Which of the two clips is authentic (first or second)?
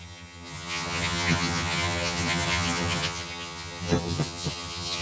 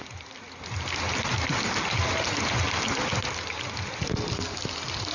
second